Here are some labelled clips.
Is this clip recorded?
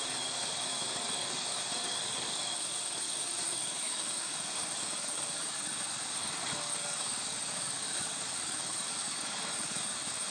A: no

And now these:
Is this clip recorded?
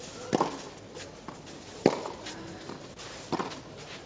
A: yes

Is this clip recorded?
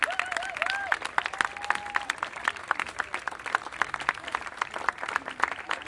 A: yes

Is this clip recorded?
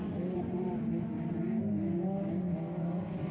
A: yes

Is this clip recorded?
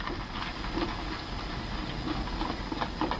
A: yes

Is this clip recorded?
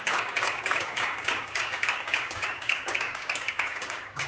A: no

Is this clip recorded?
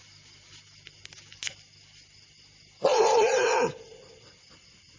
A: yes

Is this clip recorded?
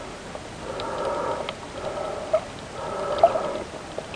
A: yes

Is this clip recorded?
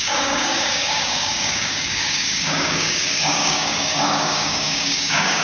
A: no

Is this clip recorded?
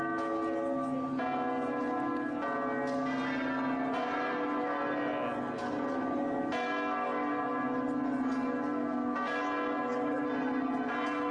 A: yes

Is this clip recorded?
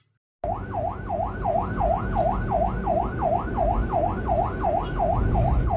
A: yes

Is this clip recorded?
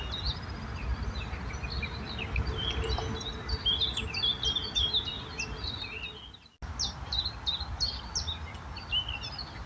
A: yes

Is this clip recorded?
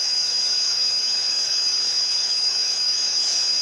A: no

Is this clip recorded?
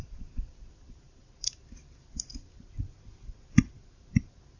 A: yes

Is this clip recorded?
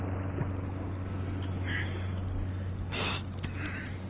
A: yes